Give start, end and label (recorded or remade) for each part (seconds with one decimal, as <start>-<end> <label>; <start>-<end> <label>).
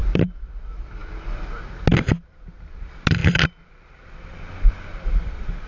0.0-0.5 remade; 0.5-5.7 recorded